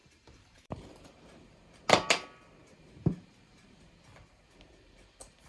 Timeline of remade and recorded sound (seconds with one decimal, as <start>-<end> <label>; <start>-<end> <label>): 0.0-1.5 remade; 1.5-2.6 recorded; 2.6-4.0 remade; 4.0-5.5 recorded

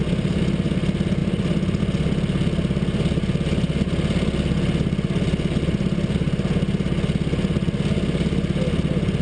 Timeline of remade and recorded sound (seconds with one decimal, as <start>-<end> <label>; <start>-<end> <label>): 0.0-9.2 recorded

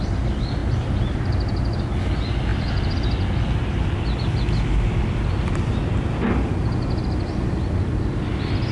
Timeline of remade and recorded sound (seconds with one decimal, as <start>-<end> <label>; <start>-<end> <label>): 0.0-8.7 recorded

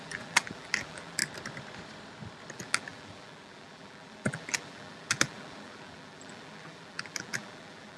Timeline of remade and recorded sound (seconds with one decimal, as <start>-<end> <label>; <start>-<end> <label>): 0.0-1.2 remade; 1.2-2.5 recorded; 2.5-8.0 remade